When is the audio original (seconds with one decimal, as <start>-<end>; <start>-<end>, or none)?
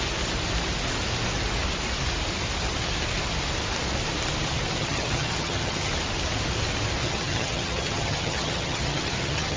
0.0-4.8; 5.9-7.0